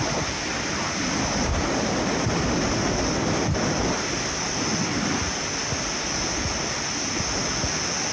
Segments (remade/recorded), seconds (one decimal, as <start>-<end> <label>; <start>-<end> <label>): 0.0-8.1 recorded